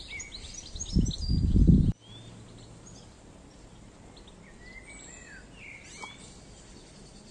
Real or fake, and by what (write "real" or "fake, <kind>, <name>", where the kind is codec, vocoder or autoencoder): real